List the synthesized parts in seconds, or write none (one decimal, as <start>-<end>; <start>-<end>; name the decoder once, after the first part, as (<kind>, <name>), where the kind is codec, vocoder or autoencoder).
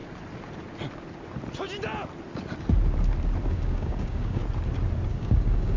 3.5-4.4 (codec, DAC); 5.1-5.8